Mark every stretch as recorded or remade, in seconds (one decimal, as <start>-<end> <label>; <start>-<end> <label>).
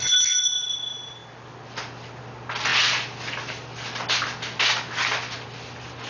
0.0-6.1 recorded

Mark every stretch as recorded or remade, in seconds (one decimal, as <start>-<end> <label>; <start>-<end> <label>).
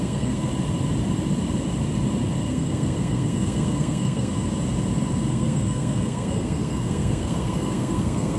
0.0-0.5 remade; 0.5-2.4 recorded; 2.4-4.3 remade; 4.3-5.3 recorded; 5.3-8.4 remade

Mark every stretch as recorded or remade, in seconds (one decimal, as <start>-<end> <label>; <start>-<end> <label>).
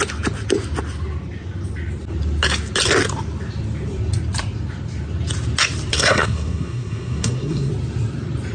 0.0-5.9 recorded; 5.9-7.7 remade; 7.7-8.5 recorded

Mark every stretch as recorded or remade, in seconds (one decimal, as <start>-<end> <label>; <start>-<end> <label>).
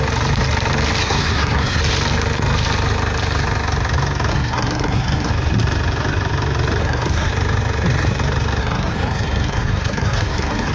0.0-1.0 recorded; 1.0-1.8 remade; 1.8-4.3 recorded; 4.3-5.3 remade; 5.3-6.8 recorded; 6.8-7.3 remade; 7.3-8.6 recorded; 8.6-10.7 remade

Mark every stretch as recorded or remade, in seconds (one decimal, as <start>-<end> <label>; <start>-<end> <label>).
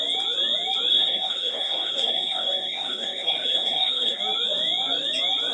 0.0-0.9 recorded; 0.9-4.2 remade; 4.2-5.5 recorded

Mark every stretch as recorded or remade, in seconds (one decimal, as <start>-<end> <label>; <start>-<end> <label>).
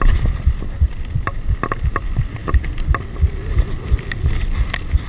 0.0-5.1 recorded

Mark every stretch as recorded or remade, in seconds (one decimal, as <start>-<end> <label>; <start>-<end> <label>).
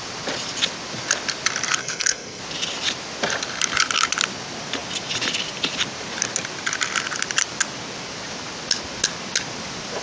0.0-1.8 recorded; 1.8-2.4 remade; 2.4-10.0 recorded